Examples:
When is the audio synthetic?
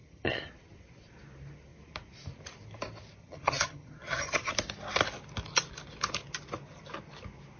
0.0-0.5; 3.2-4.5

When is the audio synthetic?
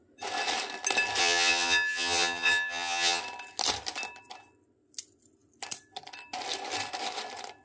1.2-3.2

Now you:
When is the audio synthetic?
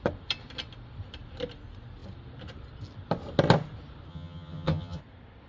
4.1-5.0